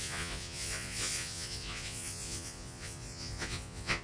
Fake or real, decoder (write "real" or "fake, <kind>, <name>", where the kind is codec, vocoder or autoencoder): fake, vocoder, Vocos